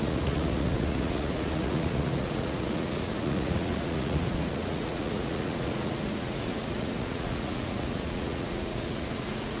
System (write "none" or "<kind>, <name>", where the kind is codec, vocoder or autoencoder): vocoder, Vocos